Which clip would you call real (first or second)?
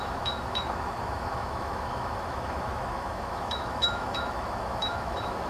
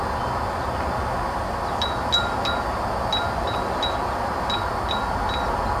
second